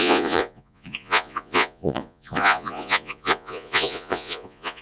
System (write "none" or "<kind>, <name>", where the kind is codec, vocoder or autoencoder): vocoder, Vocos